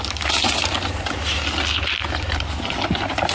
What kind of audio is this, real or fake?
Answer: real